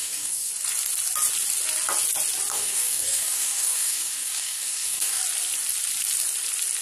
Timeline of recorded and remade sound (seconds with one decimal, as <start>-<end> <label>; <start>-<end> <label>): 0.0-0.5 remade; 0.5-2.5 recorded; 2.5-5.2 remade; 5.2-6.8 recorded